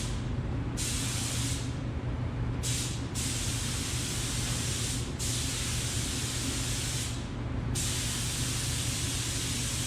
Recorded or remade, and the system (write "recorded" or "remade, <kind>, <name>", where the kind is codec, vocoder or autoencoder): recorded